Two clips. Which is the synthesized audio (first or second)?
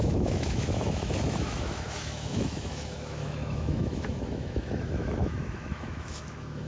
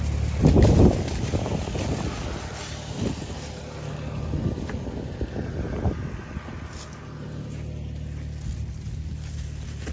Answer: first